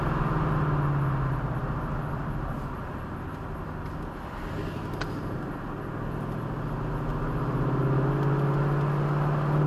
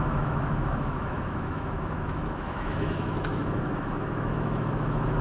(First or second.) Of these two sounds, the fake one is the second